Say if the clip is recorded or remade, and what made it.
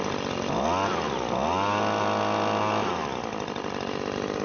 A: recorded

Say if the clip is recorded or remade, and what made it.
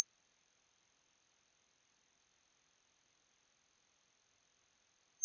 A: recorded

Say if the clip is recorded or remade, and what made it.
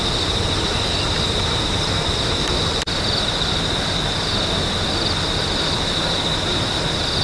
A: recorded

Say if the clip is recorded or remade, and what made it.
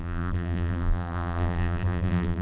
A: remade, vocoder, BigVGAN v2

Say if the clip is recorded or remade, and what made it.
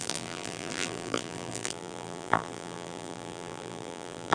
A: remade, vocoder, BigVGAN v2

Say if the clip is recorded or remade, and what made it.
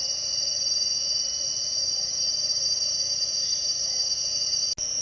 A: recorded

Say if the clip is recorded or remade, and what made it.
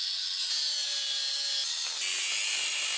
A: recorded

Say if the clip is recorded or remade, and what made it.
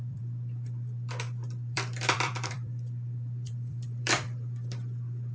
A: remade, vocoder, BigVGAN v2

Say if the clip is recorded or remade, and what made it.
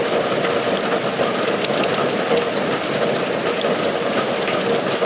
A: recorded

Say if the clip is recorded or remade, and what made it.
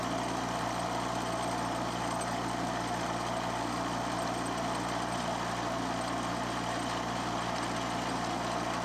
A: recorded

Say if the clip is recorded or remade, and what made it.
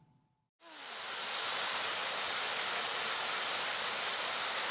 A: recorded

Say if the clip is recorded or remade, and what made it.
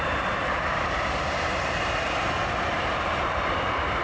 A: remade, vocoder, BigVGAN v2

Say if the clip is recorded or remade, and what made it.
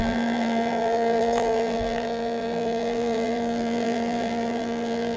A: remade, vocoder, BigVGAN v2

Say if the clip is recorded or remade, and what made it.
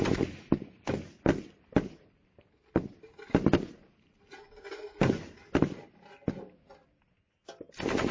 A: recorded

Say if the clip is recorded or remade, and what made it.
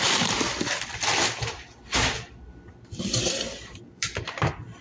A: remade, vocoder, BigVGAN v2